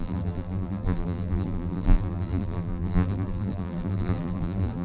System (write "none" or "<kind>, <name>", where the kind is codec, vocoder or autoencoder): vocoder, BigVGAN v2